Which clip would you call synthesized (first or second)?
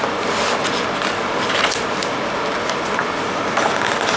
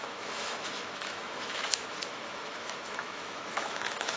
second